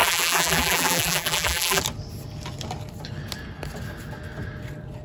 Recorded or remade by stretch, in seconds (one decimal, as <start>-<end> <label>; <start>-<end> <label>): 0.0-1.8 remade; 1.8-5.0 recorded